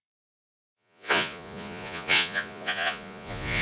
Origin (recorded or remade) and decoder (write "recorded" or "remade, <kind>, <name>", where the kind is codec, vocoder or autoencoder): remade, vocoder, Vocos